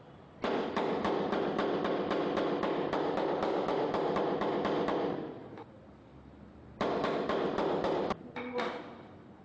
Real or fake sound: real